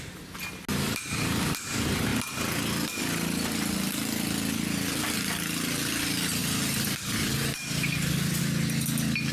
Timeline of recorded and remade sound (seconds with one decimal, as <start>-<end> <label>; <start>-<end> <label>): 0.0-6.4 recorded; 6.4-8.4 remade; 8.4-9.3 recorded